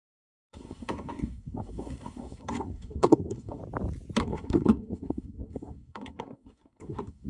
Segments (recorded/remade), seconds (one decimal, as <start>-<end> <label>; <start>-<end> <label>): 0.0-3.6 remade; 3.6-4.2 recorded; 4.2-7.3 remade